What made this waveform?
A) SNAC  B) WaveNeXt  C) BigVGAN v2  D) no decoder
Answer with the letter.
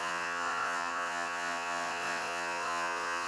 B